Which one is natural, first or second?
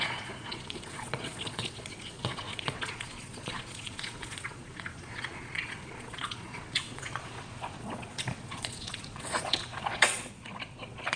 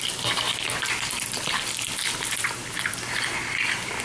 second